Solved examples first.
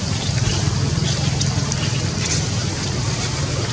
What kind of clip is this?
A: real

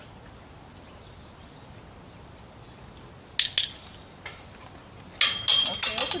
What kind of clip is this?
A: real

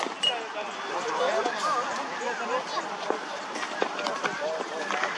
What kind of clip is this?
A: real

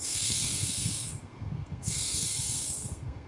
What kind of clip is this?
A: fake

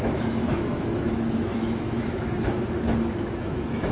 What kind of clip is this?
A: fake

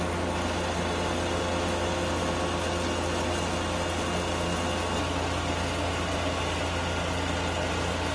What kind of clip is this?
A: real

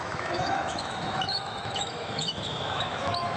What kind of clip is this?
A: fake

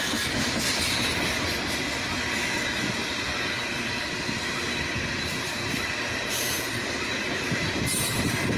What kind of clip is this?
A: fake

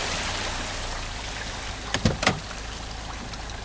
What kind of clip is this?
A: real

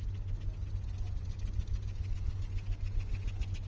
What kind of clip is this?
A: real